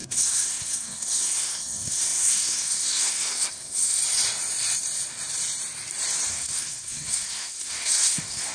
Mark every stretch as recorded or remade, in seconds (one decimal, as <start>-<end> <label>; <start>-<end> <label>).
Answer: 0.0-4.0 remade; 4.0-6.3 recorded; 6.3-8.5 remade